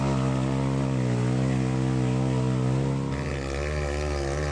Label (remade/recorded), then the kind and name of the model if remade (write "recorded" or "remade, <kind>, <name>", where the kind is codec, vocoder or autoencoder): recorded